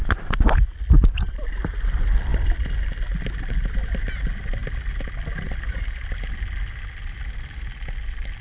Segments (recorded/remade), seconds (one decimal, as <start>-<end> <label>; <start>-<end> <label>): 0.0-1.3 remade; 1.3-8.4 recorded